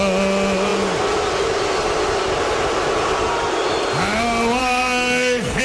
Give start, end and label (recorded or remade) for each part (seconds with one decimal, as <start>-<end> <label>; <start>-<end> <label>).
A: 0.0-4.6 recorded; 4.6-5.6 remade